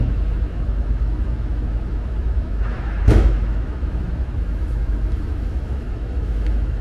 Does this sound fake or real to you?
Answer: fake